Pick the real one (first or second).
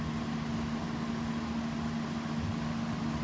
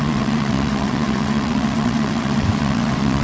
first